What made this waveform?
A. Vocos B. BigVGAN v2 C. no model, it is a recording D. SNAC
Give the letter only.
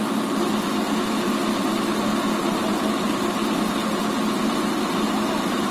C